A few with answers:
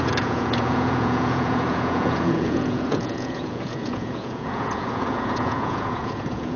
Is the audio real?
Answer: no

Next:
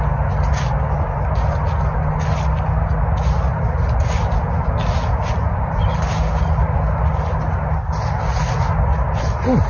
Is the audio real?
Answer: yes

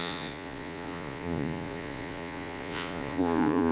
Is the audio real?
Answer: no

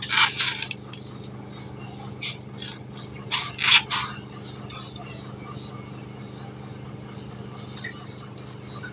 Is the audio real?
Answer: yes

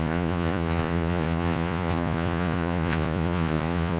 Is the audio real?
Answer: no